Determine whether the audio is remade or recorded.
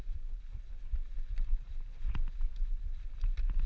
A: recorded